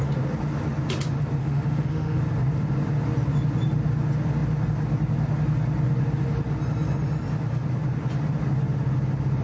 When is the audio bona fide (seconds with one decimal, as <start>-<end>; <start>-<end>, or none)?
0.0-1.4; 2.2-9.4